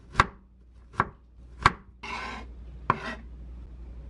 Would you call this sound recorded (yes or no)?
yes